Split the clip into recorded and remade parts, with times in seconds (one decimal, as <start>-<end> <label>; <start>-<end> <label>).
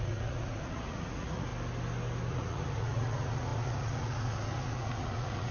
0.0-1.5 remade; 1.5-2.3 recorded; 2.3-5.5 remade